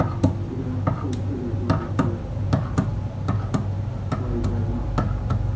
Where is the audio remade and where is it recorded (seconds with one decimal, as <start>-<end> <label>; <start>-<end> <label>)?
0.0-5.6 recorded